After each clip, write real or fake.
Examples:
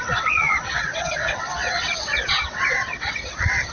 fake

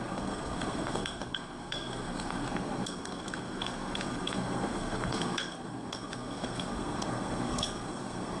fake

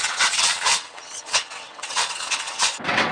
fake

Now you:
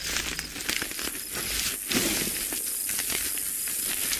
real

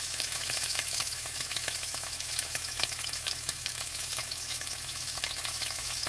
fake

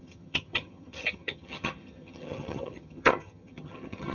fake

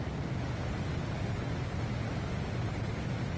real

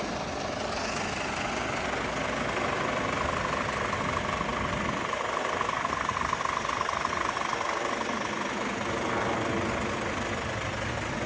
real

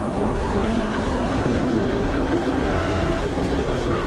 fake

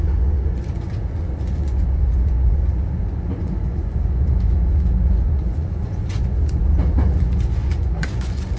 fake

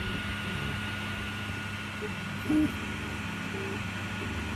real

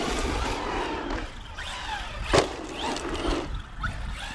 real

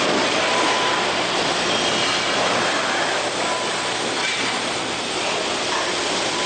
fake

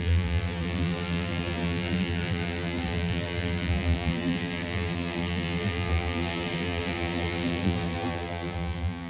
fake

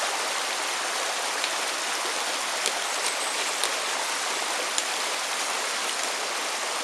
real